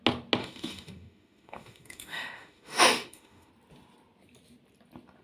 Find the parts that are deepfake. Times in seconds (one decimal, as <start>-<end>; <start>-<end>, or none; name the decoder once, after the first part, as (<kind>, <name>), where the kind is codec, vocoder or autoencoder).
0.4-3.5 (autoencoder, DAC-VAE)